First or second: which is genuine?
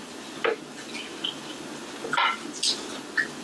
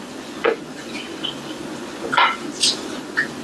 first